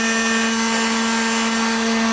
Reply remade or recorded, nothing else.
recorded